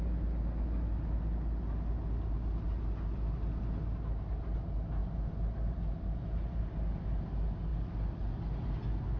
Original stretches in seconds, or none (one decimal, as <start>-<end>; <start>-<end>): 0.0-9.2